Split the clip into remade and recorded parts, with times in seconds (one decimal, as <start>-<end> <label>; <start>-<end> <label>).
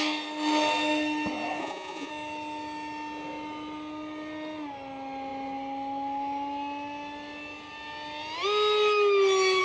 0.0-1.6 recorded; 1.6-2.1 remade; 2.1-9.6 recorded